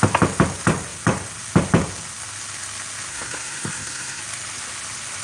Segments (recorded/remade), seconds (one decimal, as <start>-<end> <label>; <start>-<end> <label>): 0.0-3.1 recorded; 3.1-4.2 remade; 4.2-5.2 recorded